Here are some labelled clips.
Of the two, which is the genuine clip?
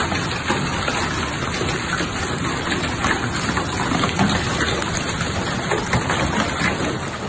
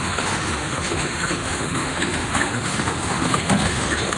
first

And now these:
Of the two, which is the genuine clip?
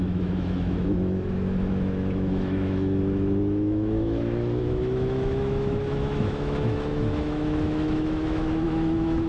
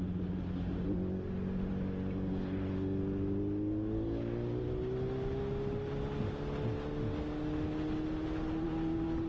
second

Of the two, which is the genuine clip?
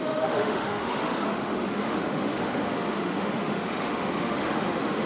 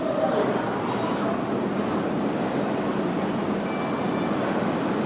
second